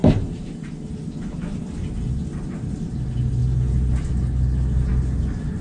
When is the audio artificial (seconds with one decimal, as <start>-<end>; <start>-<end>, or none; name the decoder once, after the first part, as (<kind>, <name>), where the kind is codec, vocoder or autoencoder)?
0.0-0.7 (vocoder, BigVGAN v2)